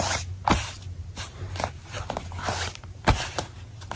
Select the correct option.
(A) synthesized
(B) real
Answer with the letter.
A